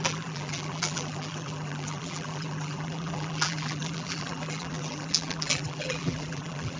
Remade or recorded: remade